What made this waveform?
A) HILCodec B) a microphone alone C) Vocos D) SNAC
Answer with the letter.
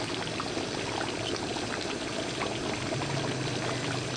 B